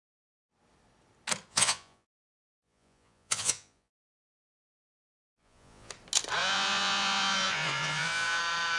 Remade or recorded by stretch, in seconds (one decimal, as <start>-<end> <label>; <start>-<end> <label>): 0.0-1.5 recorded; 1.5-5.9 remade; 5.9-6.4 recorded; 6.4-8.4 remade; 8.4-8.8 recorded